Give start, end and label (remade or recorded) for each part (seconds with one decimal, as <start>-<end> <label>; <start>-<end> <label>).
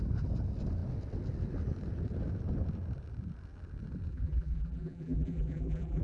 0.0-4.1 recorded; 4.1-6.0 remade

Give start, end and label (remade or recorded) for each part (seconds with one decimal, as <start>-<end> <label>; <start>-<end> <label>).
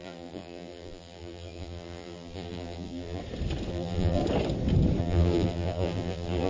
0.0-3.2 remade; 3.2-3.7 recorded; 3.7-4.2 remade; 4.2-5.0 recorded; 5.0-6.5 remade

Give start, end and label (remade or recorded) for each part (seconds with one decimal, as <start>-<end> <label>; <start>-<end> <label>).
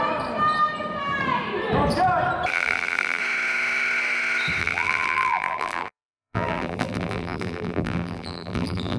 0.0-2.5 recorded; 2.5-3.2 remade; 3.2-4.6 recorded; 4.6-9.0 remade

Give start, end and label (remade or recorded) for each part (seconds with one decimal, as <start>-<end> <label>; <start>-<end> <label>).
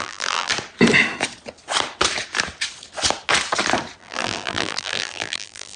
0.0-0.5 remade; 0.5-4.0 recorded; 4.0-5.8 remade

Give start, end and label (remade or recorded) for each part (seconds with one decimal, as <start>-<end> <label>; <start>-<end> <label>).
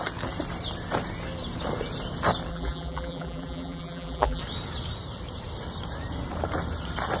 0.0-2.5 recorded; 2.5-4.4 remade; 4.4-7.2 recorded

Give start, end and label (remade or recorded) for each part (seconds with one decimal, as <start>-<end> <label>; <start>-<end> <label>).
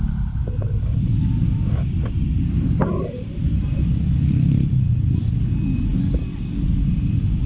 0.0-5.9 remade; 5.9-6.5 recorded; 6.5-7.5 remade